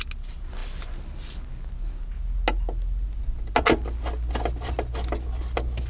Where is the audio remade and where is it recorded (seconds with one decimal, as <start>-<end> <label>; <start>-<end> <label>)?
0.0-5.9 recorded